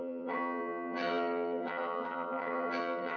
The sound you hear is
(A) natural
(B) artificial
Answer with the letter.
B